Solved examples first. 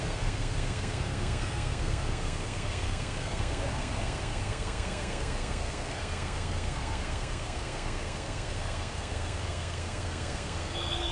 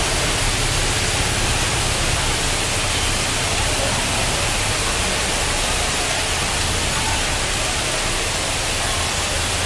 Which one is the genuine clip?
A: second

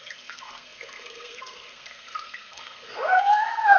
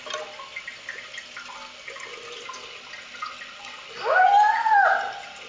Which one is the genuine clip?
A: second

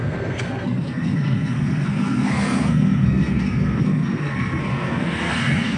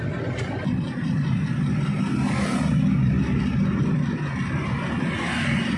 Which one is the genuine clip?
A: second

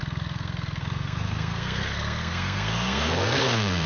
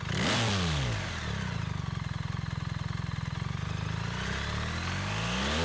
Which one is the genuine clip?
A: second